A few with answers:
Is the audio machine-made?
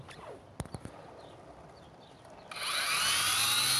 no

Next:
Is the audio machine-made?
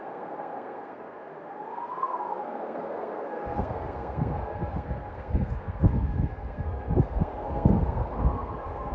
yes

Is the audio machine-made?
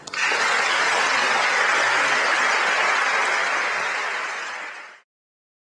no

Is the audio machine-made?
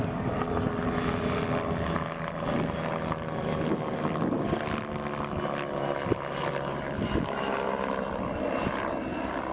no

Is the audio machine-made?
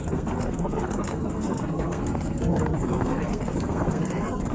yes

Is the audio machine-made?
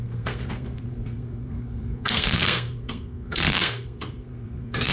yes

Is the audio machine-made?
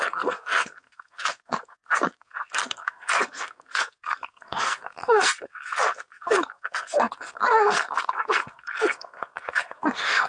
yes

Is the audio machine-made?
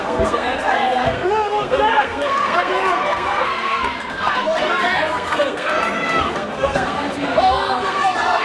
yes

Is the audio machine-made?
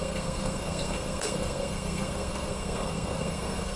yes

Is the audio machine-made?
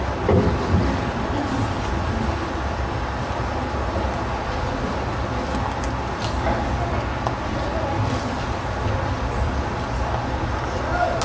no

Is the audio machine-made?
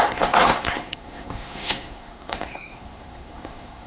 yes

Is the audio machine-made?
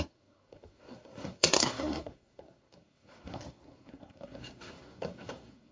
yes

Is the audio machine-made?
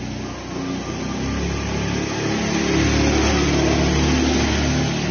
no